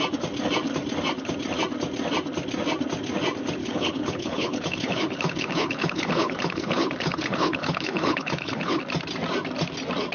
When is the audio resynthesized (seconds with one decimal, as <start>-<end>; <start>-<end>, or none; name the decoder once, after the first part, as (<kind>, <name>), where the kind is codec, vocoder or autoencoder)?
3.6-8.8 (codec, HILCodec)